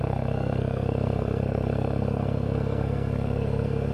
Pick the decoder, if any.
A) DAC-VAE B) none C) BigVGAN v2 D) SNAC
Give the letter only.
D